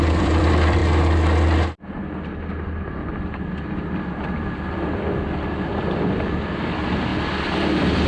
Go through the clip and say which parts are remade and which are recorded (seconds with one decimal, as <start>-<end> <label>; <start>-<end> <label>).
0.0-0.8 remade; 0.8-3.1 recorded; 3.1-7.1 remade; 7.1-8.1 recorded